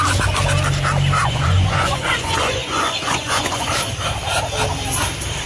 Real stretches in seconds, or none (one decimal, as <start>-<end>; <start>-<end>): 0.0-1.2; 3.7-5.5